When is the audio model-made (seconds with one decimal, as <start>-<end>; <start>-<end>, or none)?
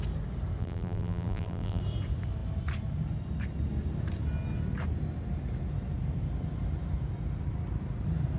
0.6-1.8